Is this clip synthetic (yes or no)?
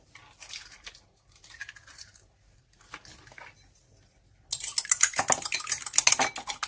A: no